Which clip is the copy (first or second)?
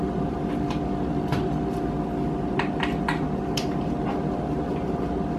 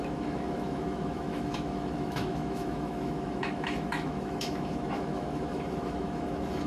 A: second